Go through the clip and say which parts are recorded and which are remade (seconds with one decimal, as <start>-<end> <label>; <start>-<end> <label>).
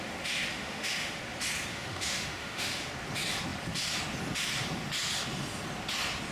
0.0-0.5 recorded; 0.5-1.2 remade; 1.2-1.7 recorded; 1.7-2.9 remade; 2.9-6.3 recorded